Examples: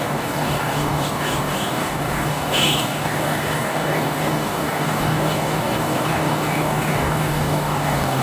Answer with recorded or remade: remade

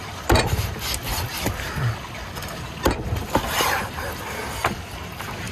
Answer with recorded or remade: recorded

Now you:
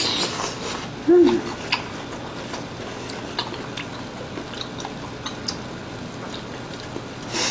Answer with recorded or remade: recorded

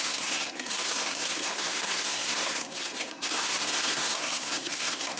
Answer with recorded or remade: remade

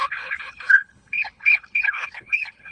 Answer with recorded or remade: remade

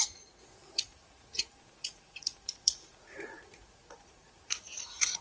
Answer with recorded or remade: remade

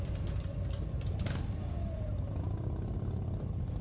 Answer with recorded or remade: recorded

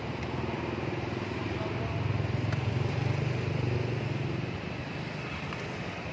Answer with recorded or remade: recorded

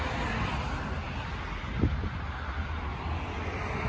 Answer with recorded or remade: recorded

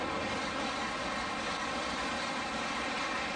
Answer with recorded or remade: recorded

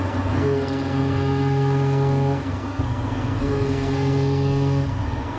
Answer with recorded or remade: remade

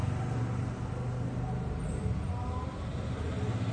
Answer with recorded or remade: recorded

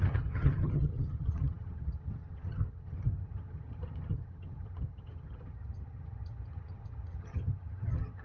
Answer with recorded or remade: remade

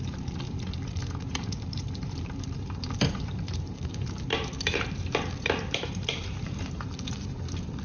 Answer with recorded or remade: remade